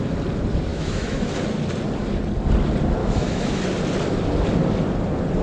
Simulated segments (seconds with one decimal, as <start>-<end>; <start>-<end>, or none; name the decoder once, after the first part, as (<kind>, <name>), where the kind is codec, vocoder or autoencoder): 0.7-1.3 (autoencoder, DAC-VAE); 3.0-3.6